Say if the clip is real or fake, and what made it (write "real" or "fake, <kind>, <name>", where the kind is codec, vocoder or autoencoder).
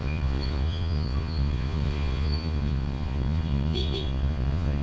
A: fake, vocoder, Vocos